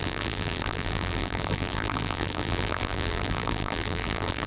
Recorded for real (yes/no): no